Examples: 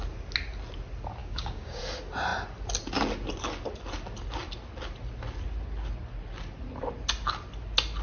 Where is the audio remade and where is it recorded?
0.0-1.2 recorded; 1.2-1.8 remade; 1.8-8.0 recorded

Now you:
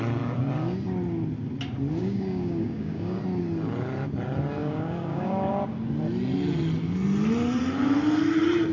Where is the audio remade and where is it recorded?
0.0-2.0 recorded; 2.0-3.2 remade; 3.2-4.6 recorded; 4.6-5.5 remade; 5.5-8.7 recorded

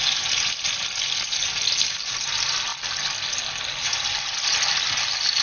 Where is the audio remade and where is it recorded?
0.0-5.4 recorded

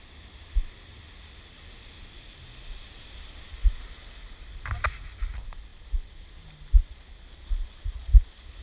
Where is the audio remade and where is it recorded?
0.0-8.6 recorded